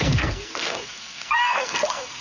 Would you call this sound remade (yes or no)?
yes